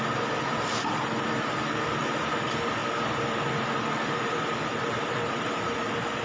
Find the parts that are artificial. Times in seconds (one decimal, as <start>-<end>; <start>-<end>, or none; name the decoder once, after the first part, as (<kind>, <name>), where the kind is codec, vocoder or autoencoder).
2.8-5.5 (vocoder, BigVGAN v2)